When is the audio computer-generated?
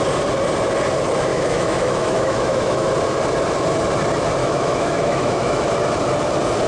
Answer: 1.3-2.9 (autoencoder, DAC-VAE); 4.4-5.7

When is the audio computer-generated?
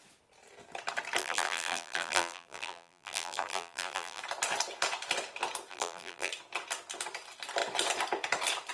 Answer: 1.2-4.2 (vocoder, BigVGAN v2); 5.7-6.3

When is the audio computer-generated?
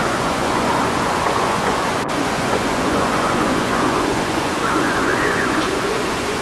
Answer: 0.0-6.4 (vocoder, Vocos)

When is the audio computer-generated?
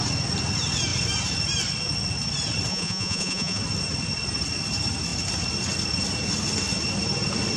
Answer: 2.7-3.6 (vocoder, Vocos)